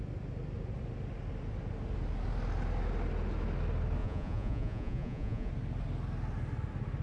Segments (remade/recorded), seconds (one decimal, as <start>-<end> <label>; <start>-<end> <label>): 0.0-4.0 recorded; 4.0-5.5 remade; 5.5-7.0 recorded